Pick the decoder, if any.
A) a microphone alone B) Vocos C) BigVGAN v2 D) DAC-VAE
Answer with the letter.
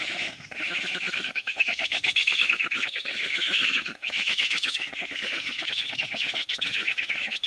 D